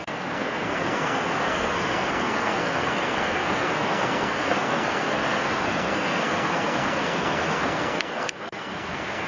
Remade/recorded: remade